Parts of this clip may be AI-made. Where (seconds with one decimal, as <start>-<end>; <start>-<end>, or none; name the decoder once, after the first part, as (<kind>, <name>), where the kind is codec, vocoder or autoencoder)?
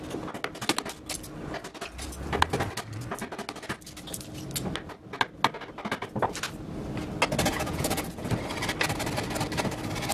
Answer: 7.5-8.3 (vocoder, Vocos)